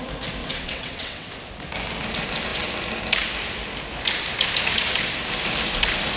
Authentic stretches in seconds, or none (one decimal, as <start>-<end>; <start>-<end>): 0.0-0.4; 1.3-6.2